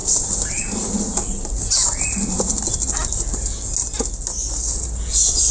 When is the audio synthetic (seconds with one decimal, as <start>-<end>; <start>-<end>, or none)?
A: none